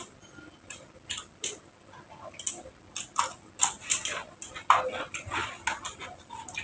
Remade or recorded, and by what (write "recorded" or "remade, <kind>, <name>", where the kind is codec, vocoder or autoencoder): recorded